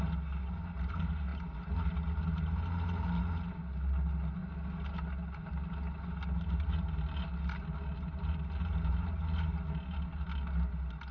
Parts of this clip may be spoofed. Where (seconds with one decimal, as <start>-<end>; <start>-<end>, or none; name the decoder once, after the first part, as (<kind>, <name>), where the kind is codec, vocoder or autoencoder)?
none